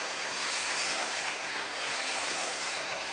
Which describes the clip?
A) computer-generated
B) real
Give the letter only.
A